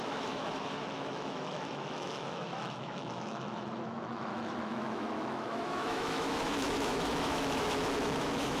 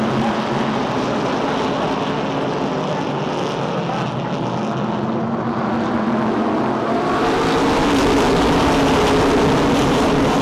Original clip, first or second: second